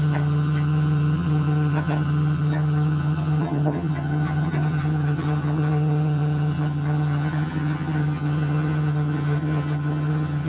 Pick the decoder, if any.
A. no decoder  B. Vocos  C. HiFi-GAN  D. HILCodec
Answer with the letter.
C